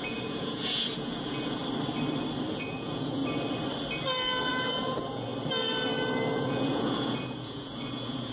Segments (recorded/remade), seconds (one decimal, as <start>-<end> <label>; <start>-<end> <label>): 0.0-1.6 remade; 1.6-2.5 recorded; 2.5-3.2 remade; 3.2-4.4 recorded; 4.4-5.3 remade; 5.3-6.4 recorded; 6.4-8.3 remade